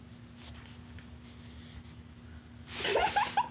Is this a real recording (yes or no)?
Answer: yes